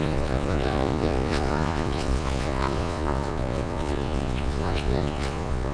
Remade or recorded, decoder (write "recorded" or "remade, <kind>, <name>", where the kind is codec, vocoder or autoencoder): remade, vocoder, Vocos